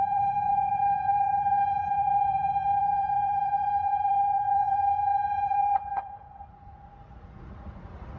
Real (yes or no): no